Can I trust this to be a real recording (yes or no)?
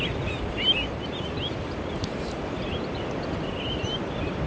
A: no